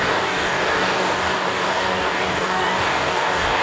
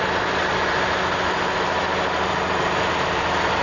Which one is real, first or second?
second